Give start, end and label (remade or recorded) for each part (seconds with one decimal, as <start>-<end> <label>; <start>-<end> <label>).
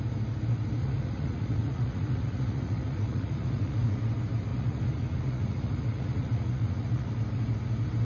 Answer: 0.0-0.8 recorded; 0.8-4.0 remade; 4.0-4.5 recorded; 4.5-7.1 remade; 7.1-8.0 recorded